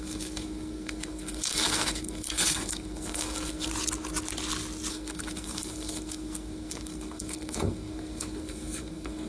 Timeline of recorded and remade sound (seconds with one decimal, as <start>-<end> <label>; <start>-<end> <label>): 0.0-3.7 remade; 3.7-4.9 recorded; 4.9-9.3 remade

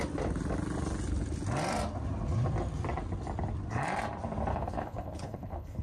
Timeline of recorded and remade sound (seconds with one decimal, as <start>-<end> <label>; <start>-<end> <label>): 0.0-4.5 recorded; 4.5-5.8 remade

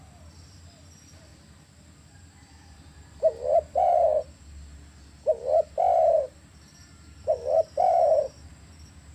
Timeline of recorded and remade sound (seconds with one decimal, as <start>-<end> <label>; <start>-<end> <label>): 0.0-1.3 recorded; 1.3-4.2 remade; 4.2-6.3 recorded; 6.3-8.5 remade; 8.5-9.1 recorded

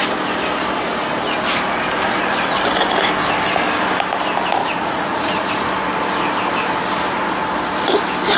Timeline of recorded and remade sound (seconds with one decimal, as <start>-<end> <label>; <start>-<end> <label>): 0.0-4.6 recorded; 4.6-5.5 remade; 5.5-8.4 recorded

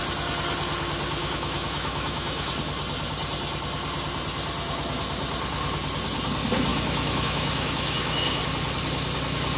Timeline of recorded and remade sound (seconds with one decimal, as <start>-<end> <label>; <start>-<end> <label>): 0.0-1.2 recorded; 1.2-2.5 remade; 2.5-6.7 recorded; 6.7-8.4 remade; 8.4-9.6 recorded

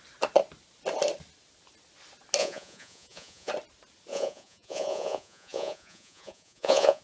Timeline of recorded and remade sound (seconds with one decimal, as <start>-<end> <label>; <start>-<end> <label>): 0.0-2.4 recorded; 2.4-3.5 remade; 3.5-4.1 recorded; 4.1-7.0 remade

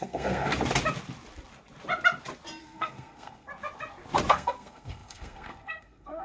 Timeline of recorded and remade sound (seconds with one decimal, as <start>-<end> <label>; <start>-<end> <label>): 0.0-0.5 remade; 0.5-2.6 recorded; 2.6-3.5 remade; 3.5-4.3 recorded; 4.3-6.2 remade